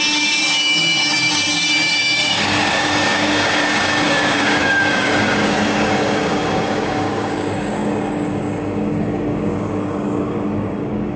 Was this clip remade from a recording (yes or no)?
yes